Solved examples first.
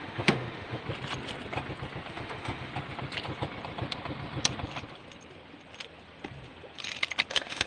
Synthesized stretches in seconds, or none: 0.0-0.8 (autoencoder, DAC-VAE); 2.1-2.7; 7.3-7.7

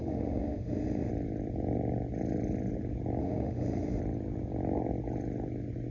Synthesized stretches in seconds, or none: 0.0-1.1 (autoencoder, DAC-VAE); 3.2-4.0

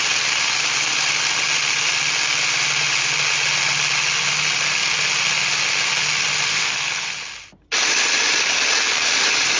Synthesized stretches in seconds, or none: 6.5-7.1 (codec, SNAC)